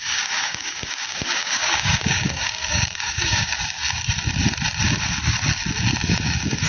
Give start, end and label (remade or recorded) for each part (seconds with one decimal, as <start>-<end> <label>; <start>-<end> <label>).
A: 0.0-3.8 remade; 3.8-6.1 recorded; 6.1-6.7 remade